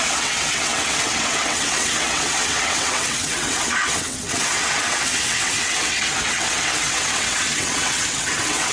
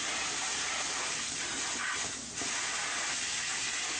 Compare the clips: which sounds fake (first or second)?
first